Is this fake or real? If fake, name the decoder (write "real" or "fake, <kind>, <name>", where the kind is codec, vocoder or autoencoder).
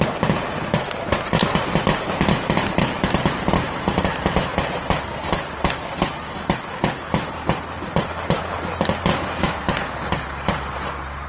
real